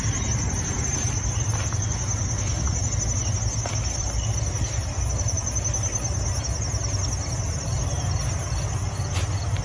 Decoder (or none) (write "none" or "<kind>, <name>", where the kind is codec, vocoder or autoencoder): none